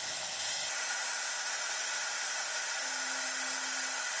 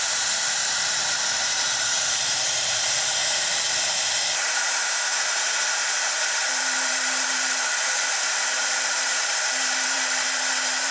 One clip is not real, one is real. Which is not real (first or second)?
second